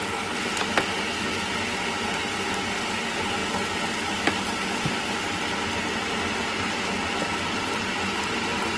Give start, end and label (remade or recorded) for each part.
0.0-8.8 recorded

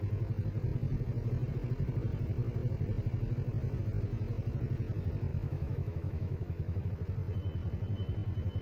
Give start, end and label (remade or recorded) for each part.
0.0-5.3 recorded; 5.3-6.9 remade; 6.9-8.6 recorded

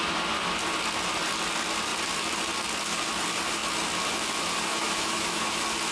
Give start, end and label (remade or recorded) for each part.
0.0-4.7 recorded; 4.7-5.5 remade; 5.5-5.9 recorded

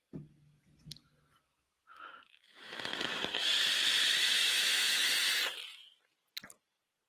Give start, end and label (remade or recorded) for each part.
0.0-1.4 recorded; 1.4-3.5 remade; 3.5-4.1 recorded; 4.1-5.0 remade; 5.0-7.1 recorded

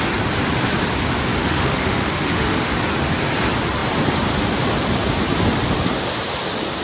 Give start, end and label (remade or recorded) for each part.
0.0-1.3 recorded; 1.3-2.7 remade; 2.7-6.8 recorded

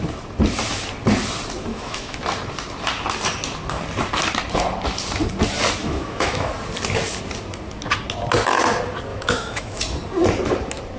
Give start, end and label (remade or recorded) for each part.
0.0-1.7 recorded; 1.7-2.2 remade; 2.2-5.8 recorded; 5.8-6.5 remade; 6.5-9.1 recorded; 9.1-9.8 remade; 9.8-11.0 recorded